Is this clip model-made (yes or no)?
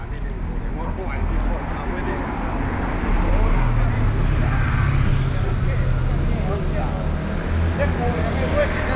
no